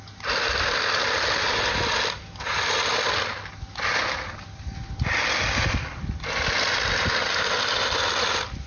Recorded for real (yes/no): yes